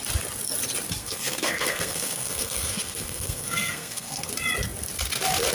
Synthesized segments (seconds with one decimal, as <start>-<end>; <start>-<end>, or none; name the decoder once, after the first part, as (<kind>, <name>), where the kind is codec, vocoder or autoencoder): 1.0-4.3 (codec, SNAC)